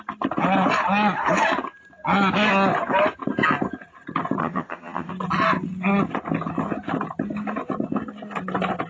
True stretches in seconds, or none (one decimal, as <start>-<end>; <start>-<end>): 0.0-4.4; 5.1-8.9